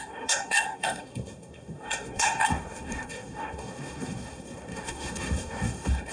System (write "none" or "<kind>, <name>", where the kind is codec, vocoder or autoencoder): codec, SNAC